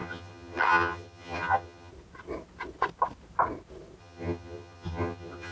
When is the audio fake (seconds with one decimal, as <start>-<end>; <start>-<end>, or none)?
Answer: 0.0-1.9; 4.0-5.5